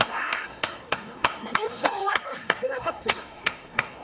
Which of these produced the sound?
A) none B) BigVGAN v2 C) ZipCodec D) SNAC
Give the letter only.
D